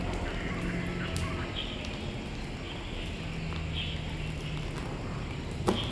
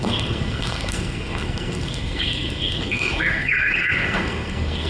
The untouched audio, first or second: first